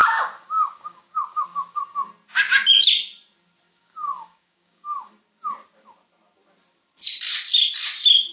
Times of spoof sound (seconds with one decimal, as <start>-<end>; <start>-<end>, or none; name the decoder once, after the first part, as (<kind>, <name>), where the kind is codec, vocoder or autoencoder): 0.0-1.8 (codec, DAC); 3.7-5.1